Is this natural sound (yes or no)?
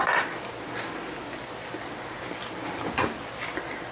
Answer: yes